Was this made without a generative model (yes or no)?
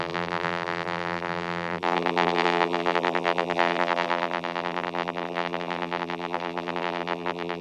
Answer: no